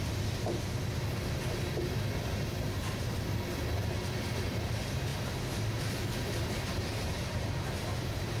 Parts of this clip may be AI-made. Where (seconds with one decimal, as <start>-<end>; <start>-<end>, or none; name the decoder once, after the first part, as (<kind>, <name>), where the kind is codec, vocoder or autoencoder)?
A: none